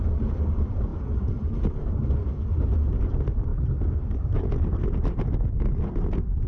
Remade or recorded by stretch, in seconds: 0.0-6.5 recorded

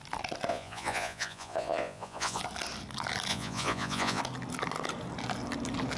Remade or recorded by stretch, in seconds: 0.0-0.5 recorded; 0.5-2.4 remade; 2.4-3.3 recorded; 3.3-4.2 remade; 4.2-6.0 recorded

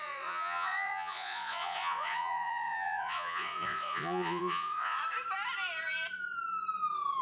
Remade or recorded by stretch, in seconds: 0.0-5.0 remade; 5.0-7.2 recorded